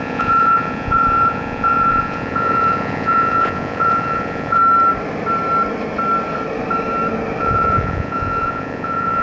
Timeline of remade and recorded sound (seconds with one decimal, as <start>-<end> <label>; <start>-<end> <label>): 0.0-4.6 remade; 4.6-7.4 recorded; 7.4-9.2 remade